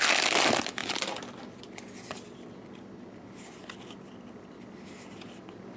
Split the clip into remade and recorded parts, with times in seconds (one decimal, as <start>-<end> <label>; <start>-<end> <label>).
0.0-5.8 recorded